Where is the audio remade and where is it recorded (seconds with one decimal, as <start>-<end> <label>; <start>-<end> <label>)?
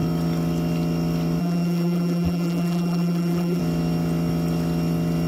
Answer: 0.0-1.4 recorded; 1.4-3.6 remade; 3.6-5.3 recorded